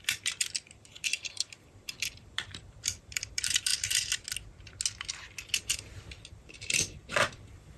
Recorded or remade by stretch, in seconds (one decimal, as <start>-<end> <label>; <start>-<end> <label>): 0.0-3.7 remade; 3.7-6.3 recorded; 6.3-7.8 remade